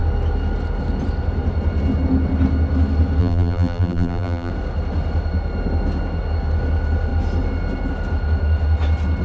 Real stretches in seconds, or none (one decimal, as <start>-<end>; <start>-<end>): 0.0-3.2; 4.5-9.2